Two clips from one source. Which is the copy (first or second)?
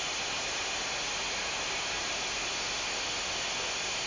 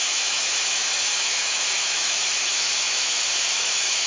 second